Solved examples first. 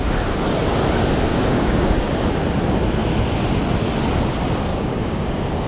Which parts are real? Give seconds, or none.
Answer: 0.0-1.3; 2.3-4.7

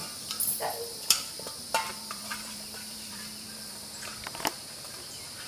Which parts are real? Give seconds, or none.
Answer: 1.3-1.9; 3.9-5.5

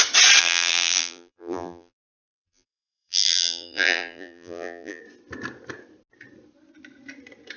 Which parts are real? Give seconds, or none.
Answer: 0.0-0.4; 5.0-7.6

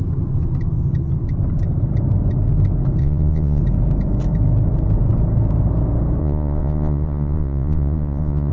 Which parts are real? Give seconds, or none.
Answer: 0.0-3.0; 3.6-6.2

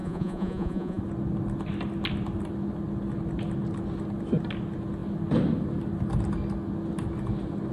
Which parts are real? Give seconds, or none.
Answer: 1.0-7.7

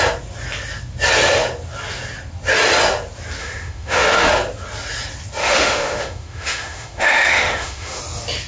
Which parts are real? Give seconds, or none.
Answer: 0.0-3.4; 4.3-5.4; 8.0-8.5